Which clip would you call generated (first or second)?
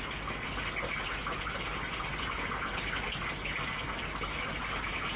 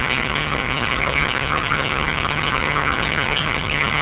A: second